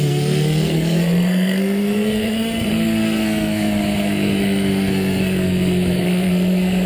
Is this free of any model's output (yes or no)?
no